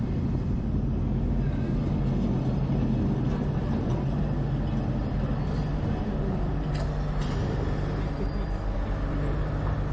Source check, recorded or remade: recorded